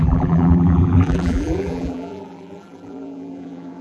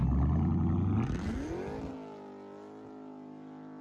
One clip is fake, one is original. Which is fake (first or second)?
first